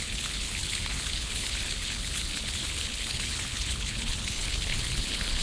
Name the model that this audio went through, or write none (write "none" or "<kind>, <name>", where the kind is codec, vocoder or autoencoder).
codec, HILCodec